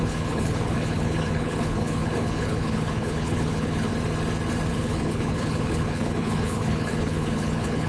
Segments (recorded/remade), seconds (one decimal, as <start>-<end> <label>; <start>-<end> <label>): 0.0-3.9 remade; 3.9-4.7 recorded; 4.7-7.9 remade